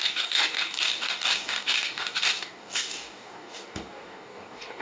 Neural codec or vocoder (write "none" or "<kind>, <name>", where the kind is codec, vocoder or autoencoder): codec, DAC